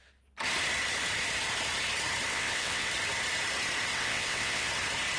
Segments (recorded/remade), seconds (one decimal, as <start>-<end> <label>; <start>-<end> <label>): 0.0-2.3 recorded; 2.3-2.9 remade; 2.9-3.9 recorded; 3.9-4.7 remade; 4.7-5.2 recorded